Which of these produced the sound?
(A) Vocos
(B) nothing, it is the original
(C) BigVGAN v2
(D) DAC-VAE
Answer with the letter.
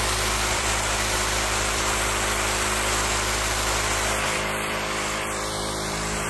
C